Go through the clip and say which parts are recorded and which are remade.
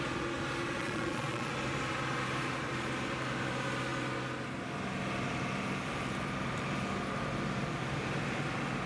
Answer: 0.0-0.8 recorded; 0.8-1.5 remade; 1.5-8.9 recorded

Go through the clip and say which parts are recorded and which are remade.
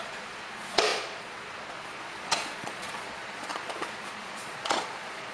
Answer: 0.0-5.3 remade